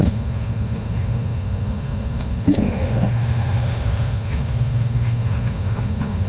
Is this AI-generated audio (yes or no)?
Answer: yes